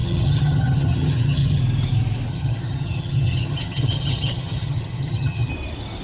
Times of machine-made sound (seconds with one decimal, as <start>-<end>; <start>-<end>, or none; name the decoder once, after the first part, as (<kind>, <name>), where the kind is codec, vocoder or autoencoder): 0.0-1.6 (vocoder, HiFi-GAN); 2.3-5.5